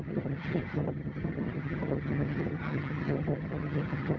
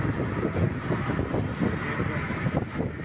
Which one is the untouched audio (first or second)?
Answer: second